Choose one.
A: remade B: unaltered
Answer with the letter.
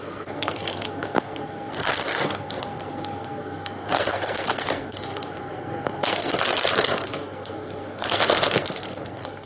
A